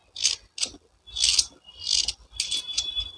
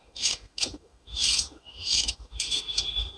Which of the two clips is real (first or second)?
first